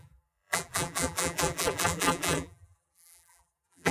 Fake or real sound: fake